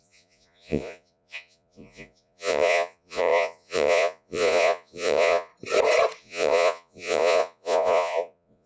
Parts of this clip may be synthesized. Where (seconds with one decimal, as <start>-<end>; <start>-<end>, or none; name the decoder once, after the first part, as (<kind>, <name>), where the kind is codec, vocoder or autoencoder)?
0.0-5.5 (vocoder, Vocos); 6.2-8.7